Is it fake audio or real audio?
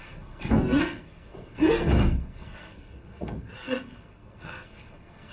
fake